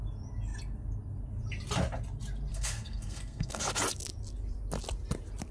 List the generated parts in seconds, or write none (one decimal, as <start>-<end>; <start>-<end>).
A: 2.5-3.6